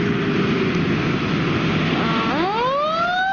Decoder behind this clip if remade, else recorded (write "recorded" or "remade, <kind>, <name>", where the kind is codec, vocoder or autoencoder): recorded